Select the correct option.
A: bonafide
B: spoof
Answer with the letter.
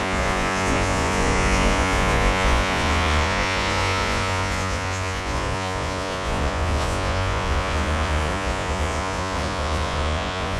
B